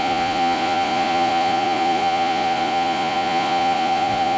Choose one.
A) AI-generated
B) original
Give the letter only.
A